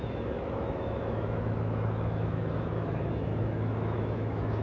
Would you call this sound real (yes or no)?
no